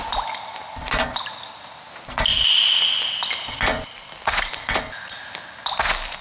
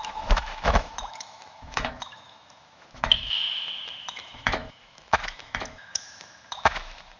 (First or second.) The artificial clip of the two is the second